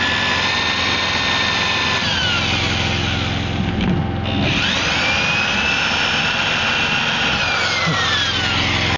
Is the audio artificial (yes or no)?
no